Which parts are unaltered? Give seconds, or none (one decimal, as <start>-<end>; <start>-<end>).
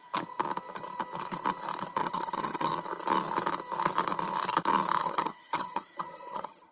0.0-2.0; 2.7-5.0